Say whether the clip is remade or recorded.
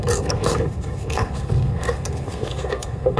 remade